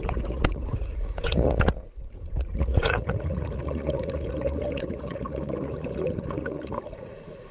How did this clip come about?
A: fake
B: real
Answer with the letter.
A